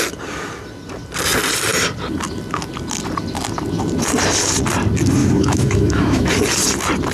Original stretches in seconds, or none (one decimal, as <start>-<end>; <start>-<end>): 0.0-5.2; 6.3-7.1